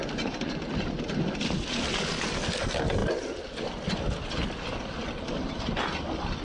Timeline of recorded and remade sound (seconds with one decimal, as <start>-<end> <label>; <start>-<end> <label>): 0.0-6.4 recorded